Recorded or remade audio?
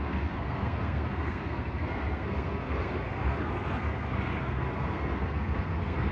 remade